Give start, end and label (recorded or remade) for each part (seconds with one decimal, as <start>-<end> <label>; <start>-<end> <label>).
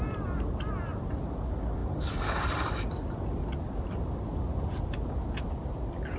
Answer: 0.0-6.2 recorded